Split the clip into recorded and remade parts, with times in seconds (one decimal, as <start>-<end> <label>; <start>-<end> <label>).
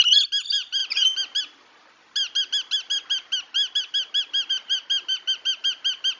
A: 0.0-6.2 recorded